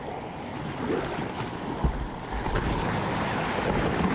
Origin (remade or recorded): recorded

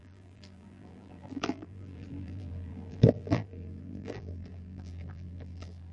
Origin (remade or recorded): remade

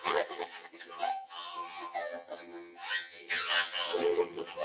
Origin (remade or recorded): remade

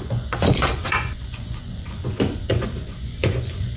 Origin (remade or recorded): remade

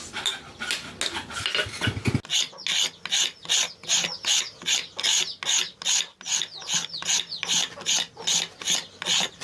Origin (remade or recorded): recorded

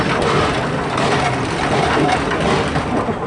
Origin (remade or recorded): recorded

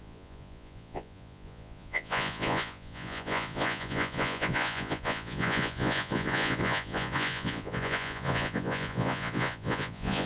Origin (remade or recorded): remade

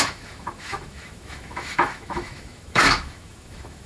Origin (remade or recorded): remade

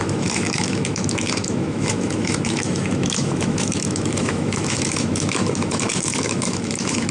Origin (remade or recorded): remade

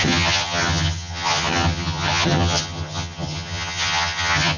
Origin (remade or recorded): remade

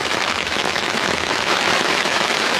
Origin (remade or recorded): remade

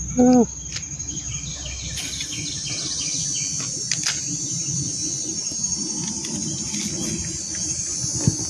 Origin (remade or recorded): recorded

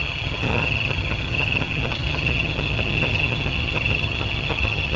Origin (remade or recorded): remade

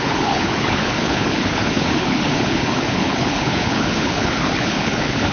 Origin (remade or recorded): remade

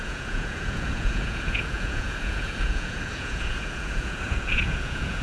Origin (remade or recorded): remade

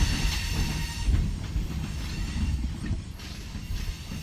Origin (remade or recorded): recorded